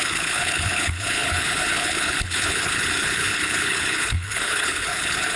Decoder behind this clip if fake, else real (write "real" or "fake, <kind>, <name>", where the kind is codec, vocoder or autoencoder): fake, codec, HILCodec